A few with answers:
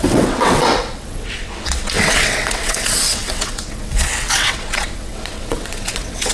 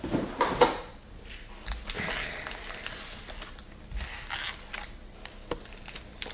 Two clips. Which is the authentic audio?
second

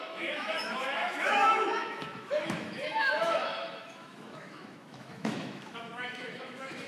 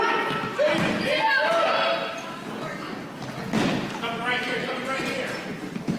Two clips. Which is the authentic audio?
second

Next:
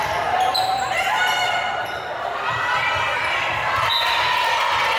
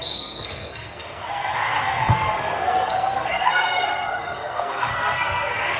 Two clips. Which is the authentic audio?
first